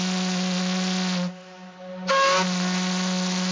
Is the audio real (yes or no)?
yes